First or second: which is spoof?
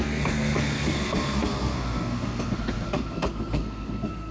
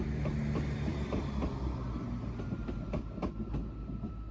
first